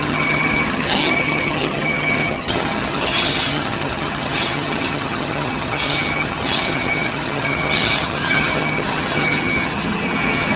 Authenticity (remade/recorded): remade